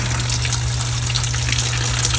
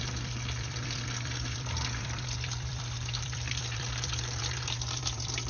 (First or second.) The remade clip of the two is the second